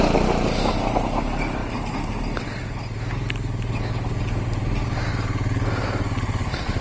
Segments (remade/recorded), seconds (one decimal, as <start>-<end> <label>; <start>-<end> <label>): 0.0-6.8 recorded